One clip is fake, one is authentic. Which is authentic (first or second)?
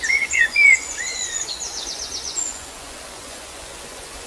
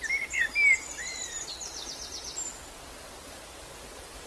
second